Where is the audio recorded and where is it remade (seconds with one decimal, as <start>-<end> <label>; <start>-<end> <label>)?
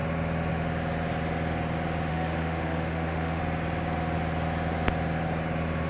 0.0-2.1 recorded; 2.1-3.4 remade; 3.4-5.9 recorded